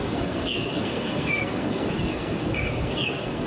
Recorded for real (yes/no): no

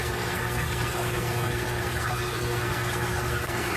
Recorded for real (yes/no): no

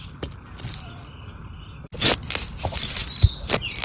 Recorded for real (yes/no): yes